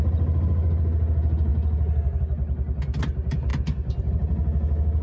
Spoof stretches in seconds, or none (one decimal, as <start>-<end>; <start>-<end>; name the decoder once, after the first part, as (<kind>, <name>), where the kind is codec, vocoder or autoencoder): 3.5-4.1 (vocoder, BigVGAN v2)